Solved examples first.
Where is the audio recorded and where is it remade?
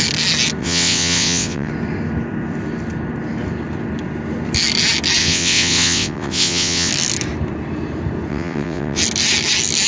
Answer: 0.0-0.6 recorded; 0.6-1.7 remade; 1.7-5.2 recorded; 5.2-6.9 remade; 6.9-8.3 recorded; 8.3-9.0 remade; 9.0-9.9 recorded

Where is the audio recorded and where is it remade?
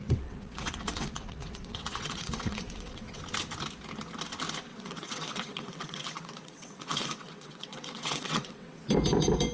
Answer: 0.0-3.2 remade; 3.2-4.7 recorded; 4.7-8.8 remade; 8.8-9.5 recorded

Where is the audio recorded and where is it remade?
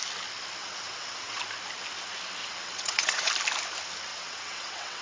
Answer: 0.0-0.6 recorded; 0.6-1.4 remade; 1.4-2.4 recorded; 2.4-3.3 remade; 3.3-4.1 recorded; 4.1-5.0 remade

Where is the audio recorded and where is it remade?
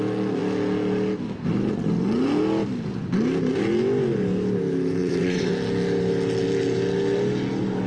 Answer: 0.0-5.0 recorded; 5.0-5.5 remade; 5.5-7.9 recorded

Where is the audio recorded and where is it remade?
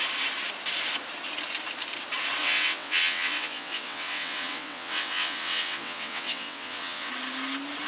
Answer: 0.0-2.4 recorded; 2.4-7.1 remade; 7.1-7.9 recorded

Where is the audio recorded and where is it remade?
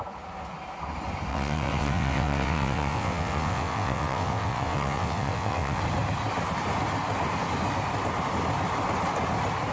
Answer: 0.0-1.3 recorded; 1.3-5.8 remade; 5.8-9.7 recorded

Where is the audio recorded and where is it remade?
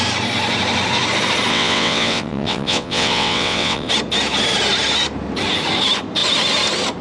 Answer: 0.0-1.5 recorded; 1.5-3.9 remade; 3.9-7.0 recorded